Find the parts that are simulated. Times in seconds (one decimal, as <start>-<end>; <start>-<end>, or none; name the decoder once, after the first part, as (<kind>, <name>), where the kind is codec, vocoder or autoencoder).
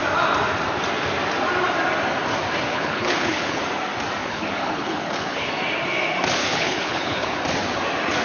2.7-3.6 (codec, HILCodec); 4.2-5.5; 6.4-7.4